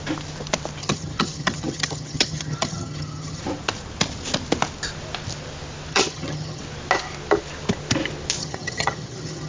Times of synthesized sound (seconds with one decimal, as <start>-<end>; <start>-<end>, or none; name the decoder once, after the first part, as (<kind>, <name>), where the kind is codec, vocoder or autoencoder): 0.8-3.4 (vocoder, HiFi-GAN); 5.9-6.6; 8.4-9.5